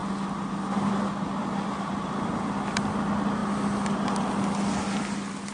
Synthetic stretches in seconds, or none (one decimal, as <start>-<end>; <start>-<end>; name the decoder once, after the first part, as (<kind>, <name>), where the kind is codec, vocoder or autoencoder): none